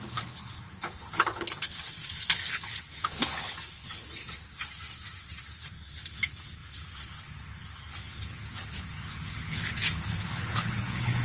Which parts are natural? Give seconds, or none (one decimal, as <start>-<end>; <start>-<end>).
4.2-5.7